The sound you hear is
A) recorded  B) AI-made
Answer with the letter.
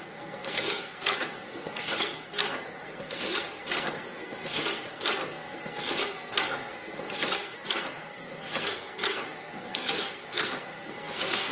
B